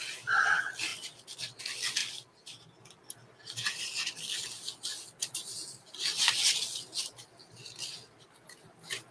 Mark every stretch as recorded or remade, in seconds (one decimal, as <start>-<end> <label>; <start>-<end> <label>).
0.0-9.1 recorded